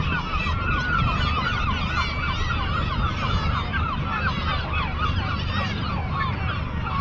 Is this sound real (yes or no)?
yes